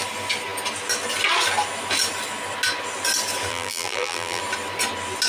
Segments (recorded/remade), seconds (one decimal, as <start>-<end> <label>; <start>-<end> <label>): 0.0-3.5 recorded; 3.5-4.4 remade; 4.4-5.3 recorded